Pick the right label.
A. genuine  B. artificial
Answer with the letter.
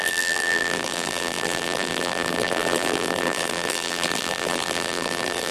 B